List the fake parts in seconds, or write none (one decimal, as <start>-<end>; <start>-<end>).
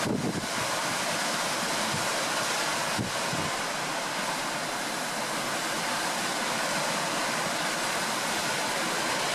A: 0.0-2.1; 5.6-9.3